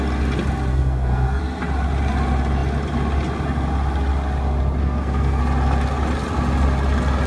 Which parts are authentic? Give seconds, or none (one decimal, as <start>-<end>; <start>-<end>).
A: 0.0-0.7; 1.4-4.8; 5.4-7.3